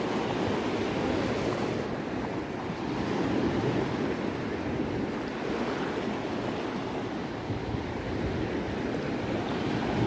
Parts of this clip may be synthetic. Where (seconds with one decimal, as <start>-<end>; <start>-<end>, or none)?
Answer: 7.2-8.1

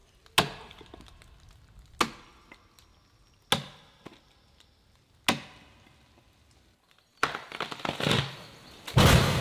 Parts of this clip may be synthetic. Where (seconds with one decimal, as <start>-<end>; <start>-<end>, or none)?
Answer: none

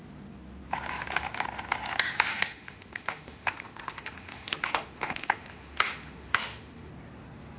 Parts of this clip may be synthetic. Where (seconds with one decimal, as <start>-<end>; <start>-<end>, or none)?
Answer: 2.3-6.9

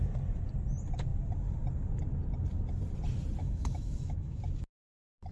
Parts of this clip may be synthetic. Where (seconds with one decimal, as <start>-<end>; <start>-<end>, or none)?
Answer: 3.4-4.4

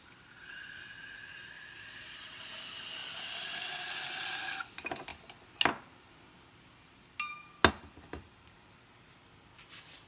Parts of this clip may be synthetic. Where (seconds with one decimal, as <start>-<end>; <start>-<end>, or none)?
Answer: 3.0-3.7

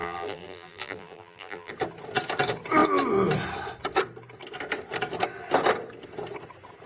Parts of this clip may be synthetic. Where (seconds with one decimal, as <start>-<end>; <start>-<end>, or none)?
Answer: 0.0-1.7

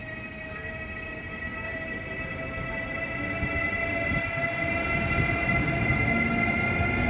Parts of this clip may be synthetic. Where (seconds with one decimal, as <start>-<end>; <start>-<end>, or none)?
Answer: 0.0-1.2